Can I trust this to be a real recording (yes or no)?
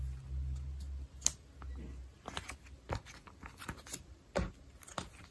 yes